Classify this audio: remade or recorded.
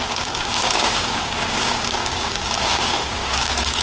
remade